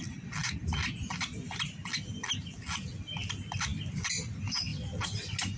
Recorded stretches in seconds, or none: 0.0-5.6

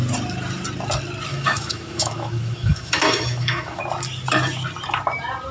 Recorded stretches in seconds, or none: 0.0-1.3; 3.8-5.5

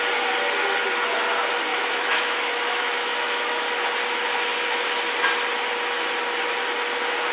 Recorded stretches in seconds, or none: 0.0-1.7; 3.6-7.3